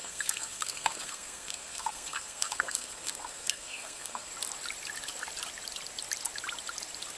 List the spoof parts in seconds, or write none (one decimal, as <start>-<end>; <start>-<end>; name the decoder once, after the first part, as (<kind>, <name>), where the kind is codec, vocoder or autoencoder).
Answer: 0.0-4.3 (codec, SNAC)

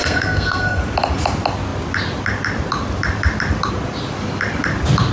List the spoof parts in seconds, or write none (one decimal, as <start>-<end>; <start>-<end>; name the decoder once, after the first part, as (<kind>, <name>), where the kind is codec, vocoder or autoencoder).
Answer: 0.0-0.8 (codec, SNAC)

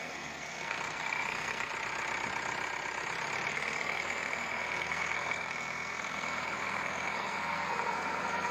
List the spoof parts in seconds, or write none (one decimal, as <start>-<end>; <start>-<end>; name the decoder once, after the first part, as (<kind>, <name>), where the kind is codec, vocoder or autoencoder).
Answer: 0.0-1.7 (codec, SNAC); 3.5-8.5

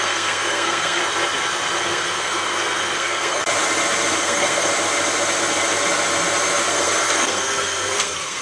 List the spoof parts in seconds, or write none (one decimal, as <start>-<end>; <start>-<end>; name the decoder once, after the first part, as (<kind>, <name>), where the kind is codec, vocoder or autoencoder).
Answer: 0.0-1.0 (codec, SNAC); 1.8-3.4; 4.2-4.7; 6.7-8.4